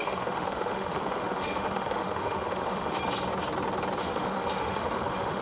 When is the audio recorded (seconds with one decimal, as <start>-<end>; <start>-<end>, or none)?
3.0-4.0